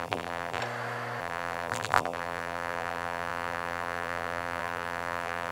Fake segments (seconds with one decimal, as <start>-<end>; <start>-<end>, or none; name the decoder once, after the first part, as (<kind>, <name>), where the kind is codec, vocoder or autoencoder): 0.0-0.6 (vocoder, BigVGAN v2); 1.2-5.5